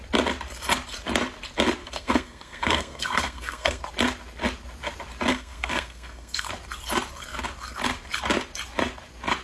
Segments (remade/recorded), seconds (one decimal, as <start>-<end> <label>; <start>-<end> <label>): 0.0-1.8 recorded; 1.8-3.8 remade; 3.8-5.3 recorded; 5.3-6.5 remade; 6.5-9.4 recorded